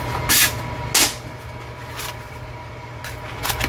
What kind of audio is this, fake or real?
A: real